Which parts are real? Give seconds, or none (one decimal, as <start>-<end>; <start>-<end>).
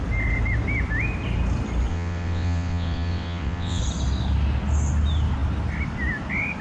0.0-1.9; 3.8-6.6